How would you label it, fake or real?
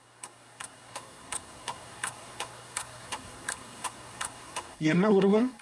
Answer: fake